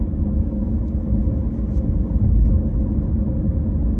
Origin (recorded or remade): recorded